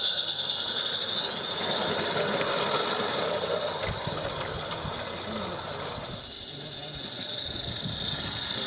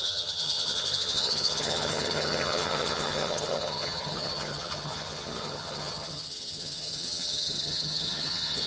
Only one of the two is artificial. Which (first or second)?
second